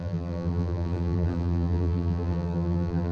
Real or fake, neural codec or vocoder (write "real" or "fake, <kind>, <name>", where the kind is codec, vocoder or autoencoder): fake, vocoder, BigVGAN v2